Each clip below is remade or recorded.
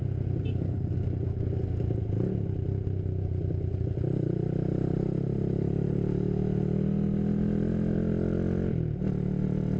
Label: recorded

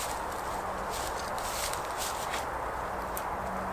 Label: recorded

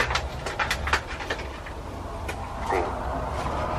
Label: recorded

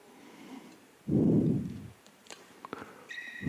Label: remade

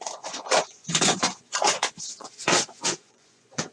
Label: remade